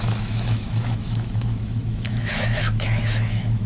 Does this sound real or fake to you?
fake